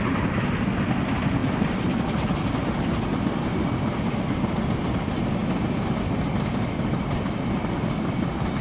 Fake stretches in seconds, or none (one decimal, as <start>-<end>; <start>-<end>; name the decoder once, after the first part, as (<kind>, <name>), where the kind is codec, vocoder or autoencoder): none